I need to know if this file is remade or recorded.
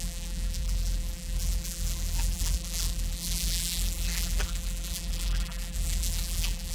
remade